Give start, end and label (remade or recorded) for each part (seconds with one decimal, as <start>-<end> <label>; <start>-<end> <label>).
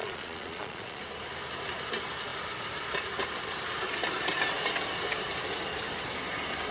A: 0.0-1.0 remade; 1.0-6.7 recorded